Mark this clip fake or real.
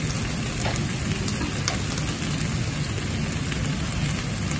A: real